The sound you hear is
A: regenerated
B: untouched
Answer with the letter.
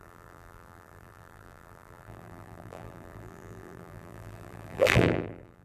A